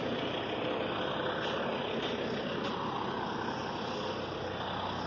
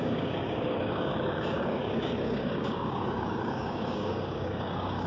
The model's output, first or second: second